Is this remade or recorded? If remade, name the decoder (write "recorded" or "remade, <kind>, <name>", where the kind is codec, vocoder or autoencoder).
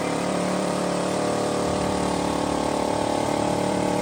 remade, vocoder, BigVGAN v2